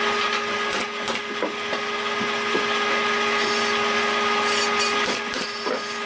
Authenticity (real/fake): real